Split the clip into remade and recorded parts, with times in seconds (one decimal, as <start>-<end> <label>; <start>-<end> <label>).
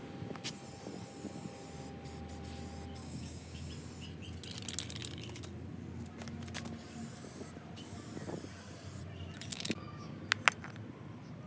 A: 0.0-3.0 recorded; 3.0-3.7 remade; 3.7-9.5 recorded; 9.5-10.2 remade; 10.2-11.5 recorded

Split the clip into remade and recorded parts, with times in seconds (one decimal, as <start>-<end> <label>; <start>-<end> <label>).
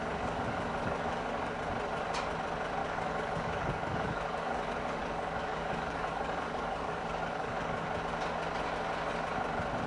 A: 0.0-1.6 remade; 1.6-2.8 recorded; 2.8-8.0 remade; 8.0-9.9 recorded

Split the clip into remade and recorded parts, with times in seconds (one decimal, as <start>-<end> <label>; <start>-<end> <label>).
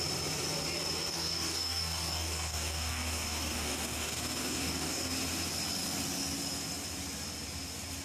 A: 0.0-1.1 recorded; 1.1-5.1 remade; 5.1-8.0 recorded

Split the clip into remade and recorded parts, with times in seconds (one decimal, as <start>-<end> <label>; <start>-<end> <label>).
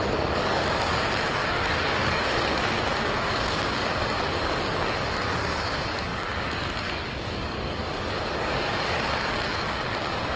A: 0.0-10.4 remade